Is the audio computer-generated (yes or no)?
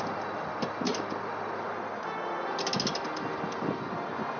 no